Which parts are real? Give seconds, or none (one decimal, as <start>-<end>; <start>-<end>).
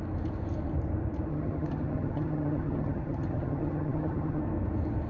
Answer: 0.0-1.3; 4.4-5.1